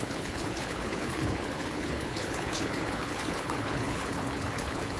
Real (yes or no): no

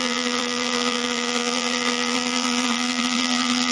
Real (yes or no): no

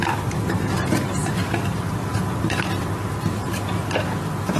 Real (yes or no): yes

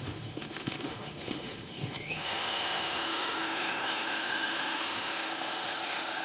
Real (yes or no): no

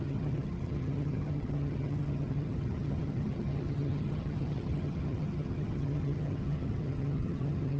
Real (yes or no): no